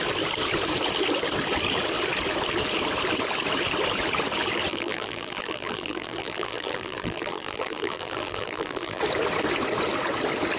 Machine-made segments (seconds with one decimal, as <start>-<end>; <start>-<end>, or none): 4.7-9.0

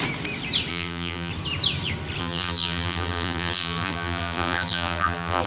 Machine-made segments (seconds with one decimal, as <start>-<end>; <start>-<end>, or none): 0.7-1.3; 2.2-5.5